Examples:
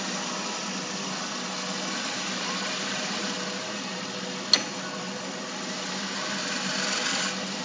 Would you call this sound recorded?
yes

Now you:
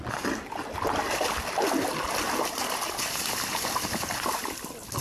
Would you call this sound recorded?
yes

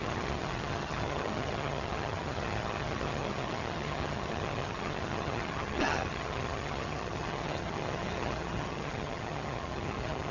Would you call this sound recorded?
no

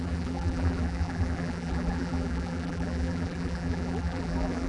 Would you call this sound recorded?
no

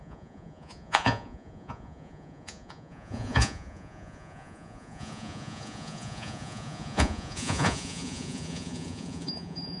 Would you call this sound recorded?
no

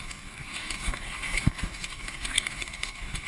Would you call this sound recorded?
no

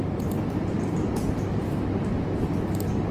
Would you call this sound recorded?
yes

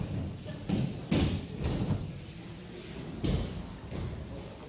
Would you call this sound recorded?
yes